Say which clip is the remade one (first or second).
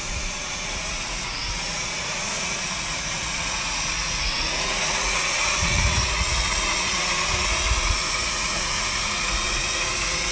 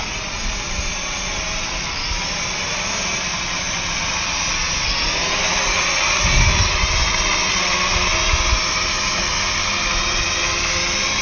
first